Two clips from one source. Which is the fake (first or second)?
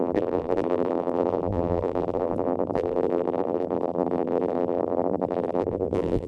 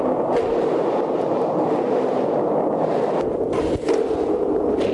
first